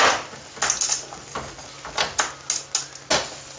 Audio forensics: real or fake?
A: real